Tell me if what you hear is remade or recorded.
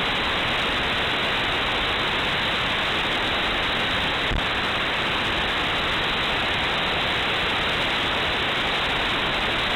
recorded